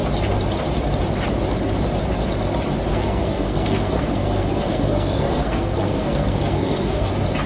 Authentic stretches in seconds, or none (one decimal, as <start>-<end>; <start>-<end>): 0.0-2.9; 7.1-7.5